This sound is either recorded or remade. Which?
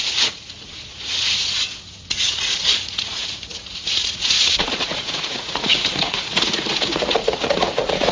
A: remade